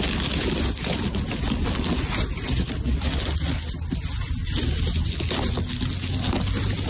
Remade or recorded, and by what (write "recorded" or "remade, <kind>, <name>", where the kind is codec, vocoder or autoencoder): recorded